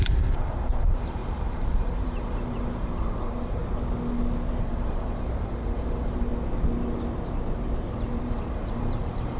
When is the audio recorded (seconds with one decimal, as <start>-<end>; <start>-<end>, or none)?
3.6-4.6; 6.3-8.2